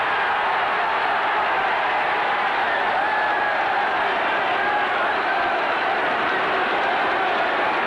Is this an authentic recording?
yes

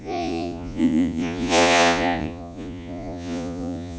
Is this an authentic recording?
no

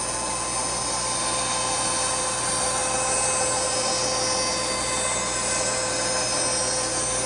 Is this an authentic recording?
yes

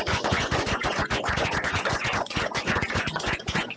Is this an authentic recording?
no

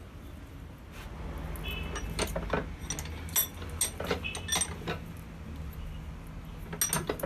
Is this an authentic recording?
yes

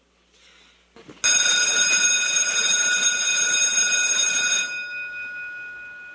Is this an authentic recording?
yes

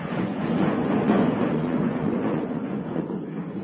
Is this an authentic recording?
no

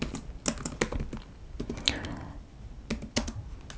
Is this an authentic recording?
yes